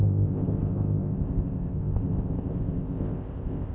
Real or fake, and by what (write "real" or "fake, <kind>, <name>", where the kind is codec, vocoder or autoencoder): fake, codec, ZipCodec